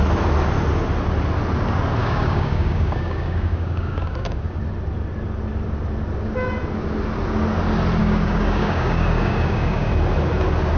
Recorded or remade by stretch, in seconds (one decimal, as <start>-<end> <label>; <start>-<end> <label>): 0.0-2.0 recorded; 2.0-4.5 remade; 4.5-8.0 recorded; 8.0-9.9 remade; 9.9-10.8 recorded